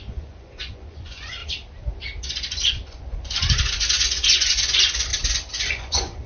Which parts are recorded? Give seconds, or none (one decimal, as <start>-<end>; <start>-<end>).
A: 1.4-2.2; 5.1-5.7